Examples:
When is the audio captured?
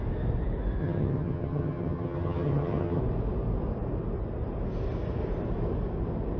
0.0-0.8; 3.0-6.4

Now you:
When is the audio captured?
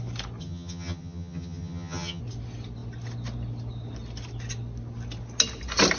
0.0-0.4; 2.2-6.0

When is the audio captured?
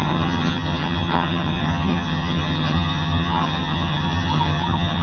none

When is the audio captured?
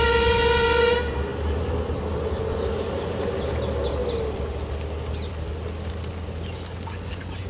0.0-7.5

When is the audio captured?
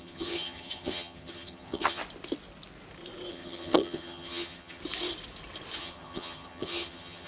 2.0-3.3; 4.8-5.8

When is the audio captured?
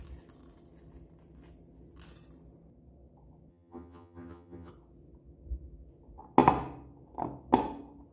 0.0-3.5; 4.7-8.1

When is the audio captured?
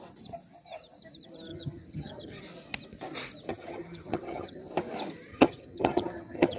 0.0-1.5; 2.4-3.5; 4.6-5.3